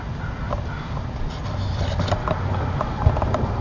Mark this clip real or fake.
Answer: fake